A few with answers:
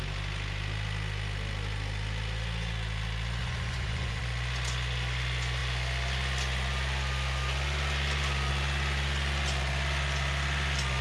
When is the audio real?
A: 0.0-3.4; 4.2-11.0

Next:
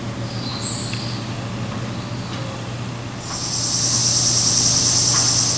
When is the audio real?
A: 0.0-5.6

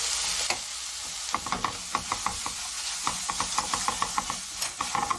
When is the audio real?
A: 0.0-2.3; 3.3-4.0

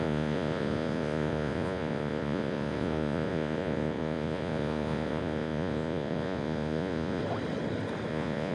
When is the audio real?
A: 7.2-8.1

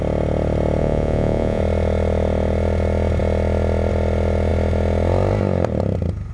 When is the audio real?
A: 0.0-0.8; 1.6-6.3

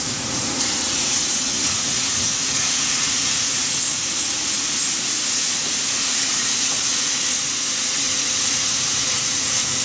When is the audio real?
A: none

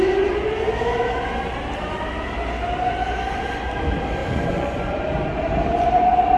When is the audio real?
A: 0.0-4.2; 5.0-6.4

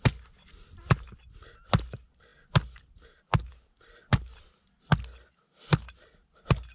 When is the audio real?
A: 0.0-6.7